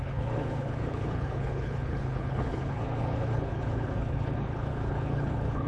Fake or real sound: fake